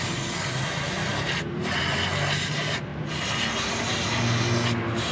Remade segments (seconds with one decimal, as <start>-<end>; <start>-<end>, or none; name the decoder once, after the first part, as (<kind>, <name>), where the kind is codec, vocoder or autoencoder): none